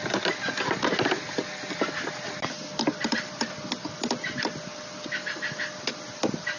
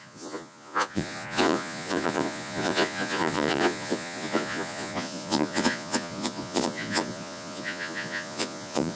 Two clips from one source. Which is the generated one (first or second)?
second